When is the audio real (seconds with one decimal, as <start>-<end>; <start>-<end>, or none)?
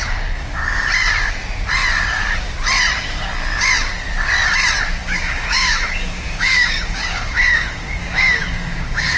0.6-4.9